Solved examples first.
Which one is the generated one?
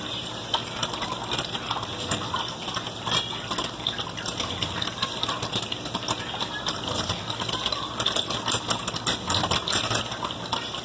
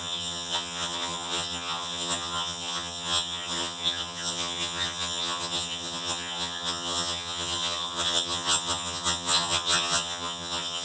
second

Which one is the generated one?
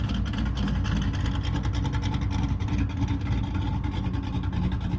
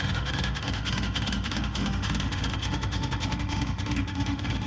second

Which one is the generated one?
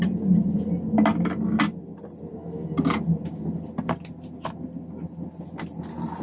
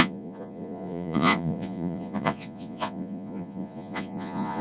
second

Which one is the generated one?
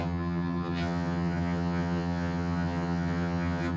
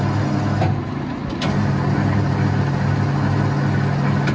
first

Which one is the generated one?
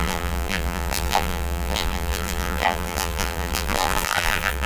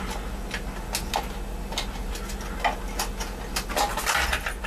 first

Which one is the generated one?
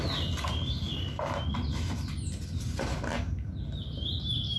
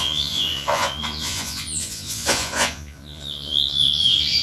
second